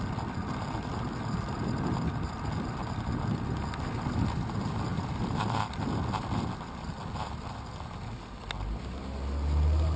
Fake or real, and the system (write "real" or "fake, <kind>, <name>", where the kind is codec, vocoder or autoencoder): real